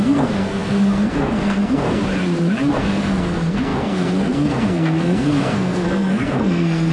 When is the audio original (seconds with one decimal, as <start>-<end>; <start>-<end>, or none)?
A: 2.0-2.7